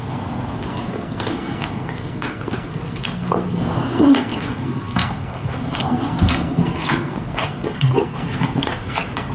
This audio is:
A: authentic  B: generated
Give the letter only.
B